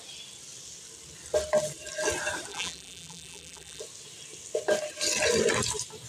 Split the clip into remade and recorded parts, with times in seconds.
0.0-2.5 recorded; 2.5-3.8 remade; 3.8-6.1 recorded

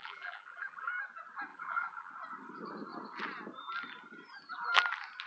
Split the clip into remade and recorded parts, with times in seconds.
0.0-0.9 remade; 0.9-1.5 recorded; 1.5-2.1 remade; 2.1-5.3 recorded

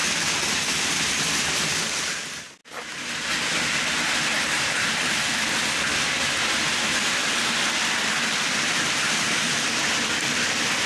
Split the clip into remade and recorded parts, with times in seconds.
0.0-2.6 remade; 2.6-7.0 recorded; 7.0-10.9 remade